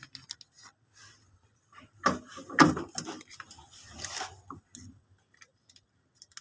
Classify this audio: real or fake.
real